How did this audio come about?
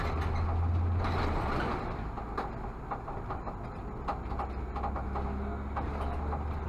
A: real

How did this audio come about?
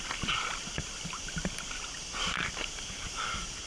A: real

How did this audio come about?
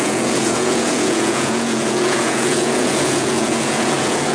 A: fake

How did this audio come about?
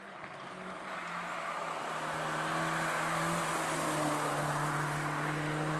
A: real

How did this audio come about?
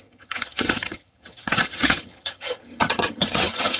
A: fake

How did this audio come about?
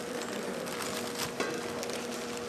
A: real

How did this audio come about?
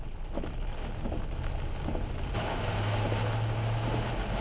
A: real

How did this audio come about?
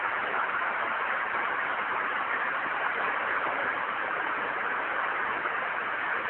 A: real